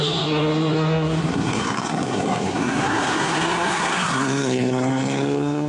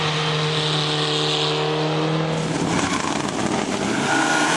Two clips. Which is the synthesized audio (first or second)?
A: first